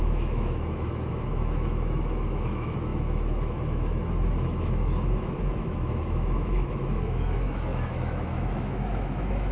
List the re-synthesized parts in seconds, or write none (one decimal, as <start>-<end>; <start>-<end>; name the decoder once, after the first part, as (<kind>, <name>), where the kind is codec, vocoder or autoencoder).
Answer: 0.0-9.5 (autoencoder, DAC-VAE)